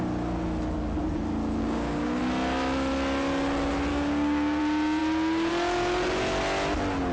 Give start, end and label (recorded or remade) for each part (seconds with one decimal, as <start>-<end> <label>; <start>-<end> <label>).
0.0-1.6 recorded; 1.6-2.2 remade; 2.2-3.9 recorded; 3.9-4.6 remade; 4.6-7.1 recorded